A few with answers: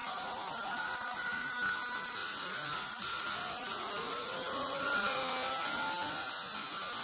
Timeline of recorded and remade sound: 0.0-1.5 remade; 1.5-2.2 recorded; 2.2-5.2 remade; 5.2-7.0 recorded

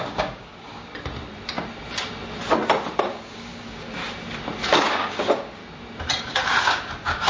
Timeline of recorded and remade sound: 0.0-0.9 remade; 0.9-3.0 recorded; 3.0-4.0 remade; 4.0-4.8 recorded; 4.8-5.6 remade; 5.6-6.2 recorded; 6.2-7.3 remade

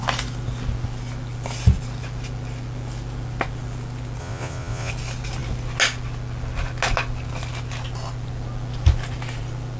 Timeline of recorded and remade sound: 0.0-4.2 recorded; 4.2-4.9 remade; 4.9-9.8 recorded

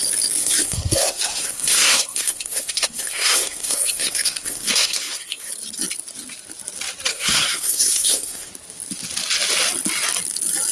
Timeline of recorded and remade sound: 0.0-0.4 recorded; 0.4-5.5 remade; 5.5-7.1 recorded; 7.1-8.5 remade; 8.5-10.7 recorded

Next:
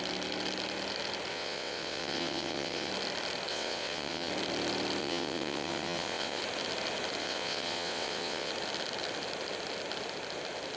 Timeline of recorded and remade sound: 0.0-1.3 recorded; 1.3-2.9 remade; 2.9-3.5 recorded; 3.5-4.3 remade; 4.3-5.0 recorded; 5.0-6.4 remade; 6.4-7.2 recorded; 7.2-8.5 remade; 8.5-10.8 recorded

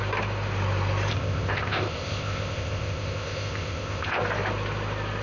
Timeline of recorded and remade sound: 0.0-1.1 recorded; 1.1-4.2 remade; 4.2-5.2 recorded

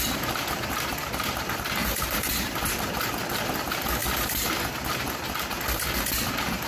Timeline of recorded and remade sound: 0.0-1.8 recorded; 1.8-2.6 remade; 2.6-4.0 recorded; 4.0-4.5 remade; 4.5-6.7 recorded

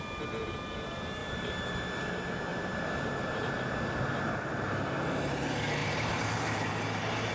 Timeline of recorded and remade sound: 0.0-1.2 recorded; 1.2-2.0 remade; 2.0-2.5 recorded; 2.5-3.7 remade; 3.7-5.8 recorded; 5.8-7.3 remade